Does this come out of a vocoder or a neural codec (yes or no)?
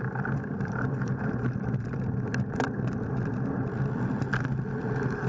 no